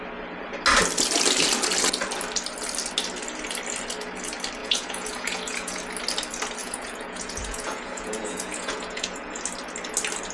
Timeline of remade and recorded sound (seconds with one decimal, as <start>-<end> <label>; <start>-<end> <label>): 0.0-4.6 recorded; 4.6-5.8 remade; 5.8-6.6 recorded; 6.6-9.4 remade; 9.4-10.3 recorded

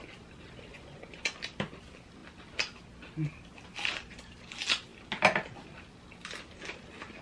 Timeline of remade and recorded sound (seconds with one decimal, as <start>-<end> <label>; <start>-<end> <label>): 0.0-0.7 recorded; 0.7-1.4 remade; 1.4-7.2 recorded